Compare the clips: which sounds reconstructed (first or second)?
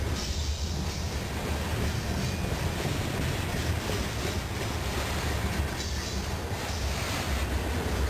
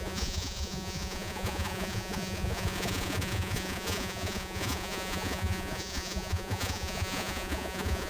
second